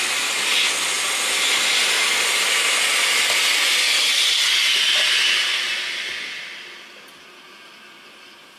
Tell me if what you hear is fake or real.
real